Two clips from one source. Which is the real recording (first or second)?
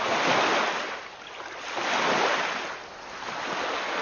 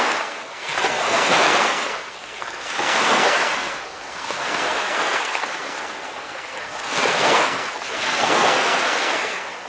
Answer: first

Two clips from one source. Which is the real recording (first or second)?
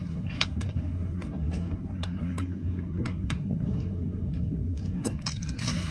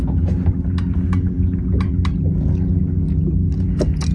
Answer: second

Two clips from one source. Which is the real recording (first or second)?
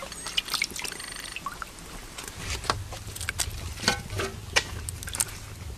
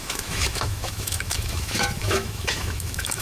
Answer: first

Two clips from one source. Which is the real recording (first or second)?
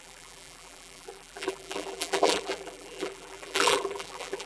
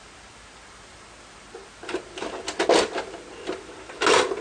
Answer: second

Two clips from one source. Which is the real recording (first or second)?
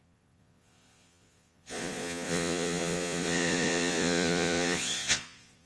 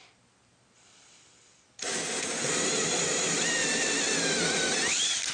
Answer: second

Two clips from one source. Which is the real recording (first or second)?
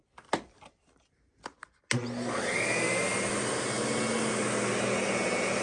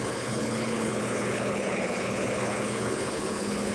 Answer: first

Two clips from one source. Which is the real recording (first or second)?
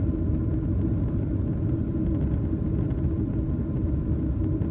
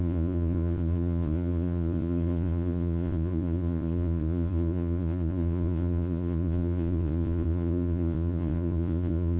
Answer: first